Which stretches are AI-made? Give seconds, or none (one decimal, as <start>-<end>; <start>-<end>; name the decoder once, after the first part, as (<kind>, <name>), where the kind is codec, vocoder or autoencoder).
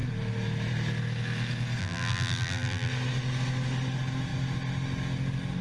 1.8-2.9 (vocoder, BigVGAN v2)